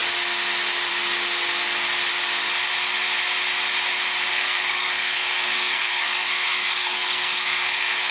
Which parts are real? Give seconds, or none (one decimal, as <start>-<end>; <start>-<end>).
0.0-4.3